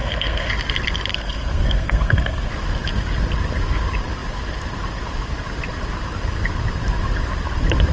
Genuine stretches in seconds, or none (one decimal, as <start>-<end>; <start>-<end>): 0.5-1.1; 2.5-7.9